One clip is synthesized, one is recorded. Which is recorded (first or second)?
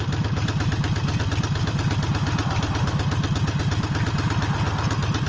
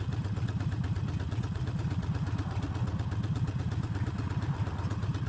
first